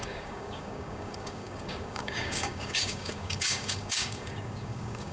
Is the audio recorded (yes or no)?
no